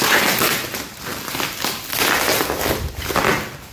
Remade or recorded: recorded